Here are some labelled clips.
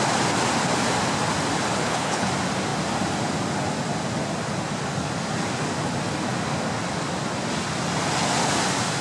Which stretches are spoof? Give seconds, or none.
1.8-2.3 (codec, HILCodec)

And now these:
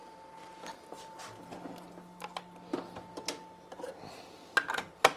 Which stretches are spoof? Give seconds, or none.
none

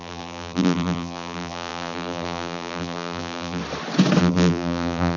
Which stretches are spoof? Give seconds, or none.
0.0-3.6 (vocoder, BigVGAN v2); 4.2-5.2

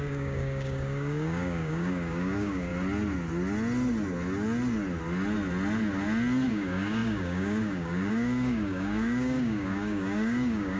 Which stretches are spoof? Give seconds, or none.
0.0-2.7 (codec, DAC); 6.5-10.8

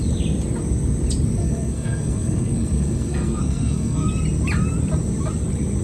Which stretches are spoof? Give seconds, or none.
1.4-4.1 (codec, SNAC)

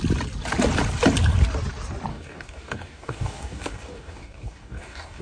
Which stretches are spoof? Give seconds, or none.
2.1-5.2 (codec, DAC)